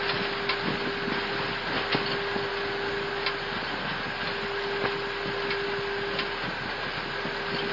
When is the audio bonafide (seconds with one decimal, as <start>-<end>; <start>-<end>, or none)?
0.0-7.7